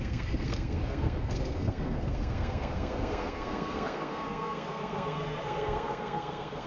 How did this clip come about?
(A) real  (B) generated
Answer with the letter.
B